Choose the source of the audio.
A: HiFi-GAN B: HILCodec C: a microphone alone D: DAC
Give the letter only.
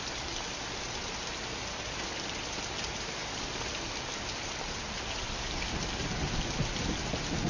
C